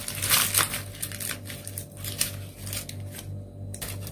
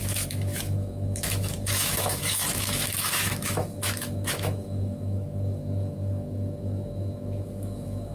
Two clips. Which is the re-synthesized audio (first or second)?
second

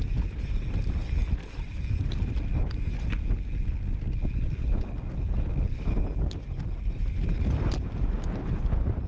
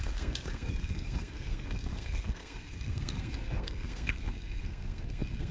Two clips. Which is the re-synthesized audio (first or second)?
second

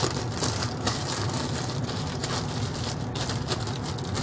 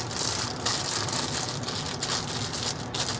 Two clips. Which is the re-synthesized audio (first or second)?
first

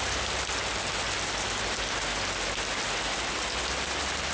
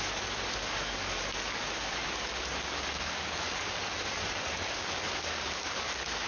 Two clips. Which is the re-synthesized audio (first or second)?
second